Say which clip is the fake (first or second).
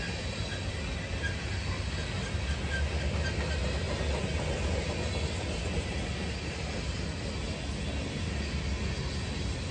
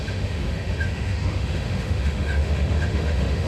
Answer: second